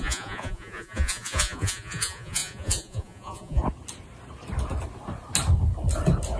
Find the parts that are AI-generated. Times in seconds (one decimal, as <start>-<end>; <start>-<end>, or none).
0.0-3.6

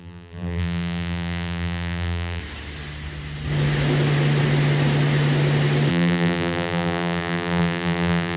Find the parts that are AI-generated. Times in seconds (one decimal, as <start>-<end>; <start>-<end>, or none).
0.0-2.4; 5.9-8.4

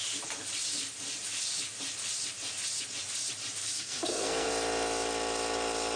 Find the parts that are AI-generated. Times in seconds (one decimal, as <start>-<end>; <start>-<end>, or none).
3.6-4.5